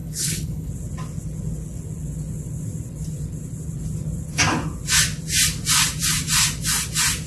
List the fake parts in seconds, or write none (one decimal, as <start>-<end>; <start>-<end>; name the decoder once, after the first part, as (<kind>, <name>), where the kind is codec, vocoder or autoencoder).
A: 0.0-0.7 (codec, HILCodec)